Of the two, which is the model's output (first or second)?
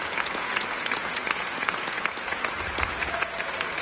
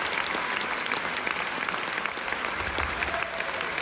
first